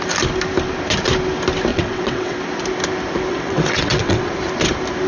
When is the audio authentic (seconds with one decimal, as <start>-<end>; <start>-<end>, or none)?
0.0-1.7; 2.4-3.3; 4.3-5.1